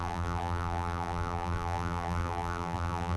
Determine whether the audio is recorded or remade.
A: remade